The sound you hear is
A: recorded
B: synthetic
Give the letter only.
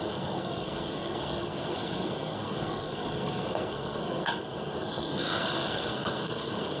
B